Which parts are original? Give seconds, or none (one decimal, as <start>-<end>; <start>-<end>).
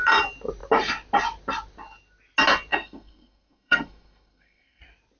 0.0-2.7; 4.8-5.2